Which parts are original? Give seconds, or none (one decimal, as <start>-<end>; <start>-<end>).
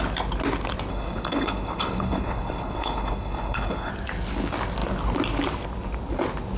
0.0-0.9; 3.9-6.6